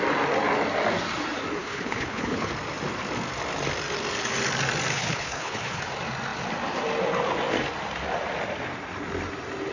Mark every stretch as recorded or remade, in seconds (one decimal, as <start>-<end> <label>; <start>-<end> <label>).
0.0-1.6 recorded; 1.6-2.5 remade; 2.5-4.9 recorded; 4.9-5.8 remade; 5.8-9.7 recorded